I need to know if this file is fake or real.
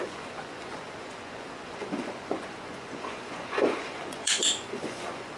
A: fake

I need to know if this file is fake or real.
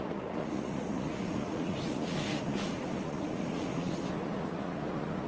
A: fake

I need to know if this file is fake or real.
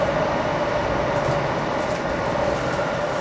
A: real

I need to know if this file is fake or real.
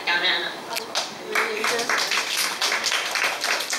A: real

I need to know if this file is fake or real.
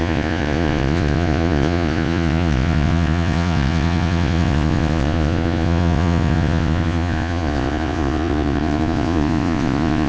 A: fake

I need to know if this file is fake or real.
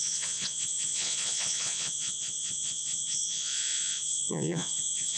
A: fake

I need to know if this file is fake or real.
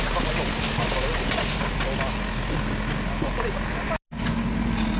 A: real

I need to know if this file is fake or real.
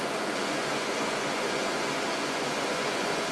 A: fake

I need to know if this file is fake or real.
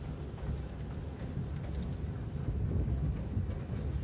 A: real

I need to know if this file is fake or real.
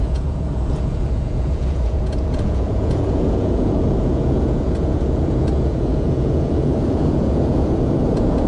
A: fake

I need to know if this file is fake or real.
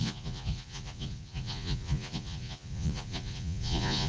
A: fake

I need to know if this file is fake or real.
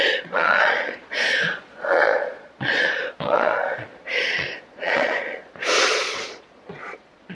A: fake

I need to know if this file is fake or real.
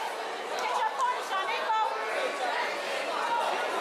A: real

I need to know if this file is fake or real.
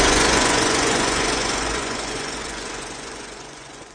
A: fake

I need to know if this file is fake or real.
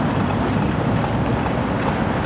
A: real